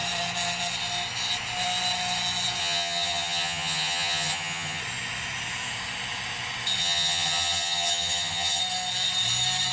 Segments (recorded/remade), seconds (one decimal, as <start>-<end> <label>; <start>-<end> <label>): 0.0-2.6 recorded; 2.6-4.8 remade; 4.8-6.8 recorded; 6.8-8.6 remade; 8.6-9.7 recorded